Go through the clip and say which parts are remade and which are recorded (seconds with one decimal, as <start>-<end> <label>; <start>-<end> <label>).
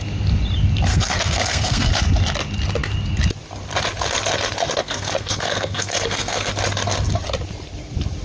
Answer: 0.0-0.9 recorded; 0.9-1.9 remade; 1.9-4.8 recorded; 4.8-6.5 remade; 6.5-8.2 recorded